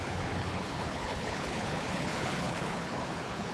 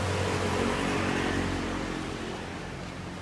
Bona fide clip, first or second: second